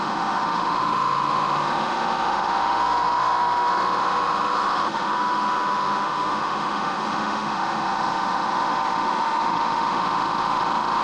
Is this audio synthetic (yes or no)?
yes